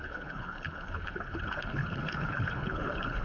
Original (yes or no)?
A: no